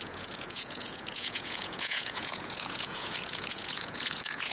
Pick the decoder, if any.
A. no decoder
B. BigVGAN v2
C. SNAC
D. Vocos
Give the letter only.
D